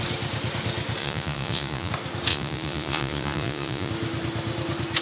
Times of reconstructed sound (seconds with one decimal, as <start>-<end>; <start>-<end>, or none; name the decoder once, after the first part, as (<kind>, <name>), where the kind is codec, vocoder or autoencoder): 1.0-1.9 (vocoder, Vocos); 2.3-3.9